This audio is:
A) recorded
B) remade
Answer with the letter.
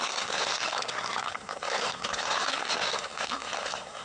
B